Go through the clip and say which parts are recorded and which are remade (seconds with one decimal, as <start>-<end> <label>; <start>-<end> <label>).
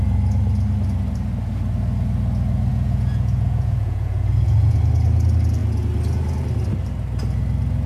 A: 0.0-2.7 recorded; 2.7-4.8 remade; 4.8-7.9 recorded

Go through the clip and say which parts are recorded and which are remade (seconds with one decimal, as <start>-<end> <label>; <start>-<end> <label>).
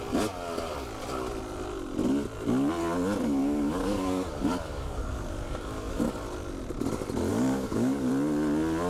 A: 0.0-3.4 recorded; 3.4-6.1 remade; 6.1-7.3 recorded; 7.3-8.1 remade; 8.1-8.9 recorded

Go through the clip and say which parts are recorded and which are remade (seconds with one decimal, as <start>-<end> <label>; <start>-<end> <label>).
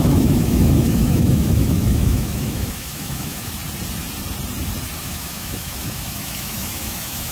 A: 0.0-3.6 remade; 3.6-5.0 recorded; 5.0-7.3 remade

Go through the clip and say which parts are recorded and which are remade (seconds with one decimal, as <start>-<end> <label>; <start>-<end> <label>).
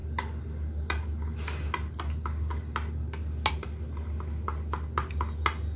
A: 0.0-5.8 recorded